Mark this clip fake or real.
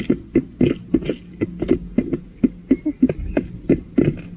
real